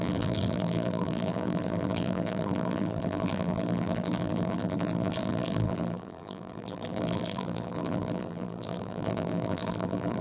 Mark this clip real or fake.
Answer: fake